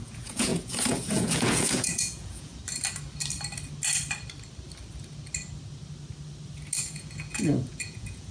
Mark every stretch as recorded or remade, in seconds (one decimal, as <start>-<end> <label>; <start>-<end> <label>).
0.0-2.6 remade; 2.6-6.8 recorded; 6.8-8.3 remade